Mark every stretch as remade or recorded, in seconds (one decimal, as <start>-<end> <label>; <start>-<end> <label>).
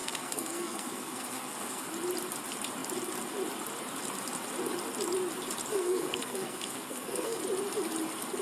0.0-1.9 remade; 1.9-5.7 recorded; 5.7-7.4 remade; 7.4-8.4 recorded